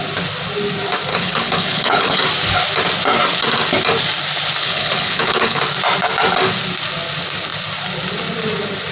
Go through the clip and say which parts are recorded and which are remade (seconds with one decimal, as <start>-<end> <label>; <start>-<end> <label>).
0.0-1.1 recorded; 1.1-2.2 remade; 2.2-4.6 recorded; 4.6-5.6 remade; 5.6-8.9 recorded